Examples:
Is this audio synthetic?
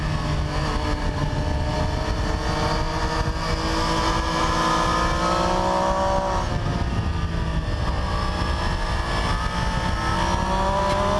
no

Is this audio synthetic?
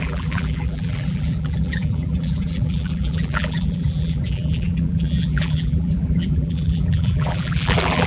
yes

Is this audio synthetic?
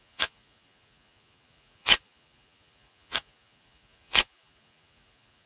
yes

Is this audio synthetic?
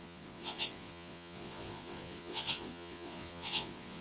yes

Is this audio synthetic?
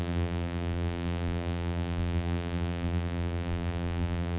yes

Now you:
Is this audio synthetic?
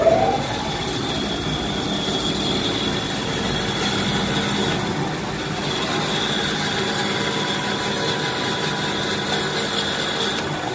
no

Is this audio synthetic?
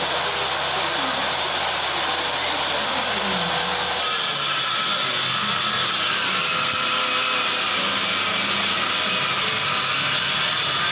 no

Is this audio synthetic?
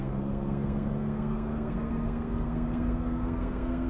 yes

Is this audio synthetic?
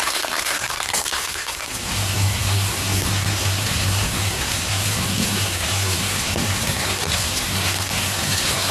yes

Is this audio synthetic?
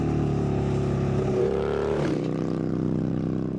yes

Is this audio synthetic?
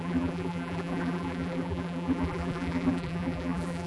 yes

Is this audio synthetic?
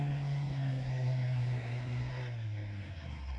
yes